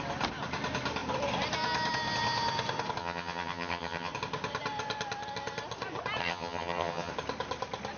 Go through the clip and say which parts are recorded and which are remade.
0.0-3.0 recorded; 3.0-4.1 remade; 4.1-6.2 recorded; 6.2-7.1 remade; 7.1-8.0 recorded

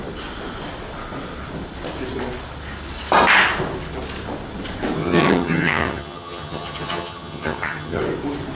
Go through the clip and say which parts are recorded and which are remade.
0.0-5.0 recorded; 5.0-8.0 remade; 8.0-8.5 recorded